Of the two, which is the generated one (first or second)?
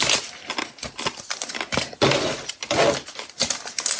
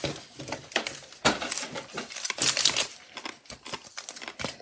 second